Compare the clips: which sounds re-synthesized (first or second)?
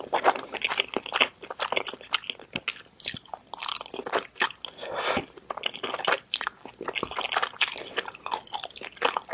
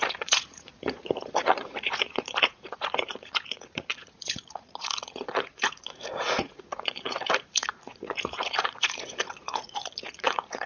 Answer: second